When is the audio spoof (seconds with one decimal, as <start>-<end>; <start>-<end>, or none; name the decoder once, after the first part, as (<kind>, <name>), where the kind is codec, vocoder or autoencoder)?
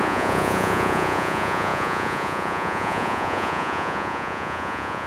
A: 0.0-5.1 (vocoder, Vocos)